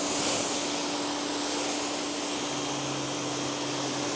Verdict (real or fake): real